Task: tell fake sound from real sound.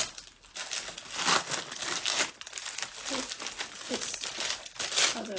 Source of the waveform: real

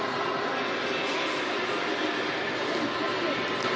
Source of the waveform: real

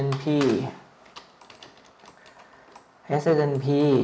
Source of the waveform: real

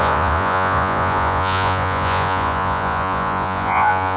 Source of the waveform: fake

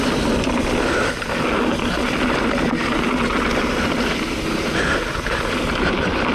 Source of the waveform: real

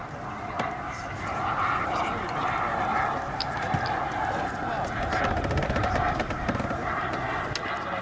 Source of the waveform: real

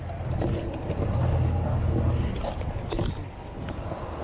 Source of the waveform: real